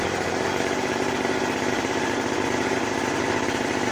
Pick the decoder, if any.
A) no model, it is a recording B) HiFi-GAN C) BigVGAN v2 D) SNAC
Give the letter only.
C